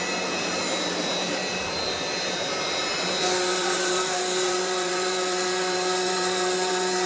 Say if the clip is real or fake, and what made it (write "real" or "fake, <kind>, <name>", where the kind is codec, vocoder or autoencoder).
fake, vocoder, BigVGAN v2